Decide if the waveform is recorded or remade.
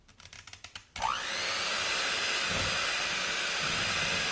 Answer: remade